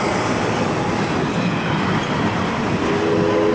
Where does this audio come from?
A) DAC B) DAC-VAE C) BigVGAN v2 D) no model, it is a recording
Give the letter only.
D